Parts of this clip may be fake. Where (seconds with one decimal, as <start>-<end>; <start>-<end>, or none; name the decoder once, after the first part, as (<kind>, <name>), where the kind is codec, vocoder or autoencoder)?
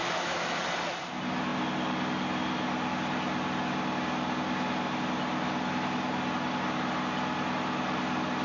0.0-0.6 (autoencoder, DAC-VAE)